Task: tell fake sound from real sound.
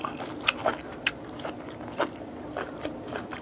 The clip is real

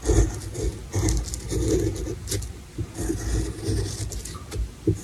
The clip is real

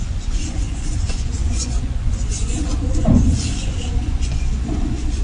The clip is fake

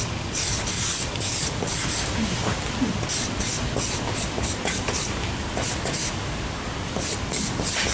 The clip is real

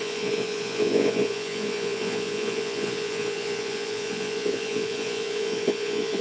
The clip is fake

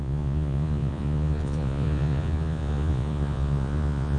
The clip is fake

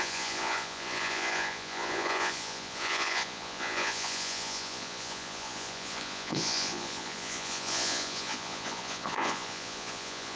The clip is fake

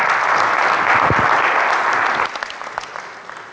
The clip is real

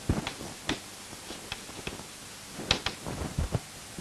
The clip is real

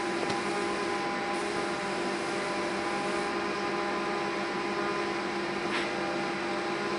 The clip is real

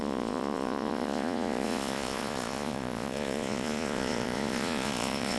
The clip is fake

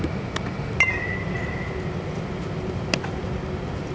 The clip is real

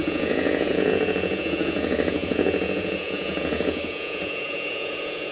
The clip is fake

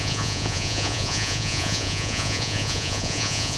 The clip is fake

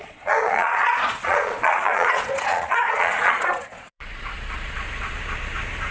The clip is fake